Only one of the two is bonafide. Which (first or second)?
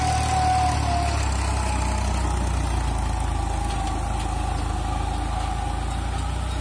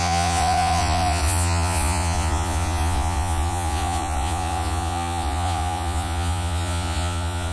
first